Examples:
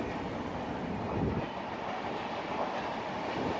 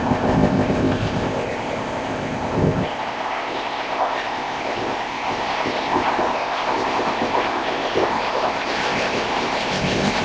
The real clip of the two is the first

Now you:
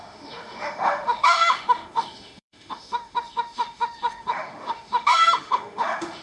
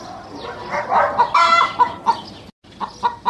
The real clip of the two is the second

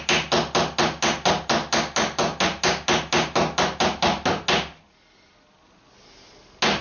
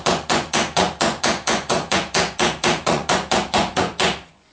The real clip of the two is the first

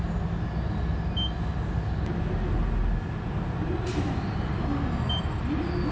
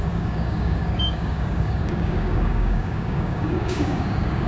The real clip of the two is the first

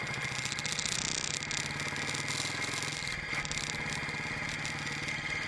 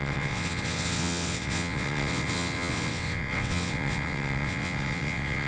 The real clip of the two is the first